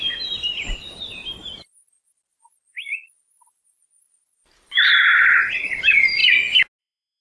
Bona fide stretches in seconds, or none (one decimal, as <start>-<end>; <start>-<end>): 1.2-5.5; 6.2-6.8

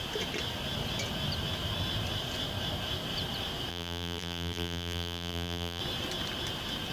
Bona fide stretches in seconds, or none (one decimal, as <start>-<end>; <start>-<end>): 0.0-3.7; 5.8-6.9

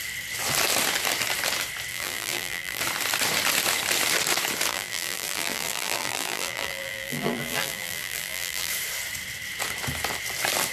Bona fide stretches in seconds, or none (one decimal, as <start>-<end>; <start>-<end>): 0.0-1.9; 2.8-4.7; 8.7-10.7

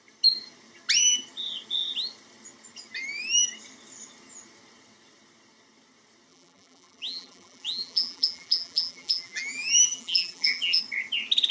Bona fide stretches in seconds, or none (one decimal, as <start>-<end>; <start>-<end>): 0.0-6.3; 10.8-11.5

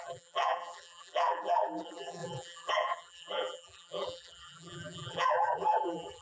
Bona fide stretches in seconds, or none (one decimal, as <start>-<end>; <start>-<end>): none

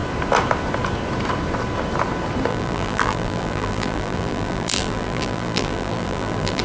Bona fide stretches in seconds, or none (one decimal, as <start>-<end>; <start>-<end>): 0.0-2.5